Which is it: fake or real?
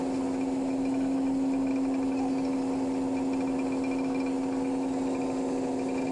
real